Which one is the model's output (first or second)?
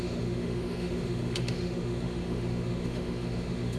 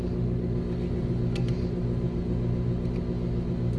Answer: first